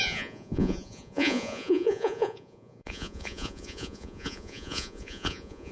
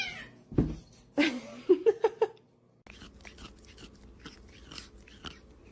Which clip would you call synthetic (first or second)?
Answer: first